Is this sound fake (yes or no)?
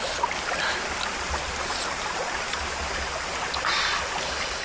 no